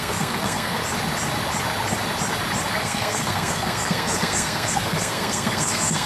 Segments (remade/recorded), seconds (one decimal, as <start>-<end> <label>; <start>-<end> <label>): 0.0-0.8 remade; 0.8-2.8 recorded; 2.8-6.1 remade